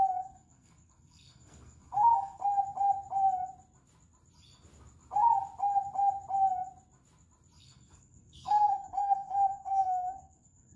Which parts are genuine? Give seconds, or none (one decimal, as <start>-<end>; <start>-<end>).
2.4-7.6